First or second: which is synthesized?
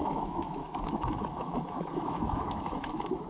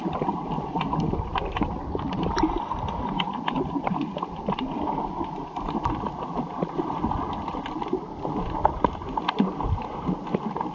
first